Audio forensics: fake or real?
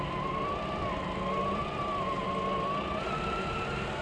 real